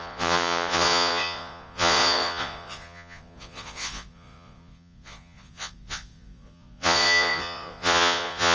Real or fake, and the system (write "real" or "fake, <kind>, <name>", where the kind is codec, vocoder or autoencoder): fake, vocoder, Vocos